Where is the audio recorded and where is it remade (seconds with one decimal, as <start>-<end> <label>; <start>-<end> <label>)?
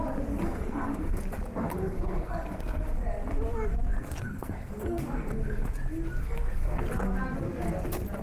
0.0-0.4 recorded; 0.4-1.2 remade; 1.2-1.6 recorded; 1.6-2.9 remade; 2.9-4.0 recorded; 4.0-5.7 remade; 5.7-6.2 recorded; 6.2-6.8 remade; 6.8-8.2 recorded